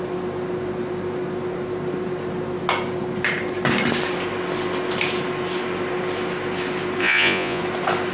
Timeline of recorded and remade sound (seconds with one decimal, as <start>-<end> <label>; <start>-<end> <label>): 0.0-7.0 recorded; 7.0-7.6 remade; 7.6-8.1 recorded